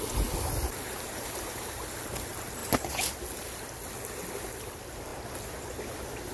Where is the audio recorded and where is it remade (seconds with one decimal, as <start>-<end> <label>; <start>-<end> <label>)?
0.0-0.7 recorded; 0.7-1.8 remade; 1.8-6.3 recorded